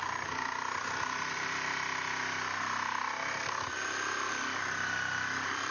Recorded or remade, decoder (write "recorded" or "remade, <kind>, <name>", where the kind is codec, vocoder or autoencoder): recorded